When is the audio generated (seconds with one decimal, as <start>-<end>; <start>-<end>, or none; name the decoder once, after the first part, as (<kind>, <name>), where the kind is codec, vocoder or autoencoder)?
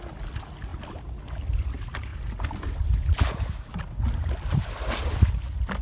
none